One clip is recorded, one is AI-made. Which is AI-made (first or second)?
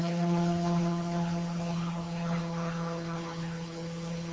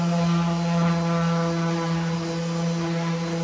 first